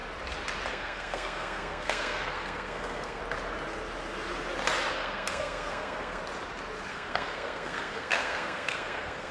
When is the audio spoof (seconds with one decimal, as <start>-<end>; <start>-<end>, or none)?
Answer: 0.7-3.2; 4.9-6.2; 6.9-9.3